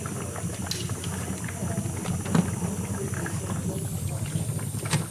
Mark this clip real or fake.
real